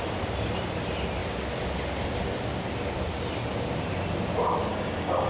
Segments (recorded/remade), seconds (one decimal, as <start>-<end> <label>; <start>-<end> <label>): 0.0-4.7 recorded; 4.7-5.3 remade